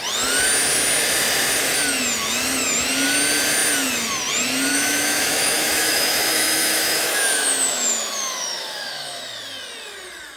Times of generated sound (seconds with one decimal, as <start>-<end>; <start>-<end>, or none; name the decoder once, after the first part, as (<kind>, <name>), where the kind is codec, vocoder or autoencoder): 4.7-9.2 (autoencoder, DAC-VAE)